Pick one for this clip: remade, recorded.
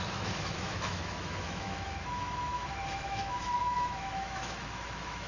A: remade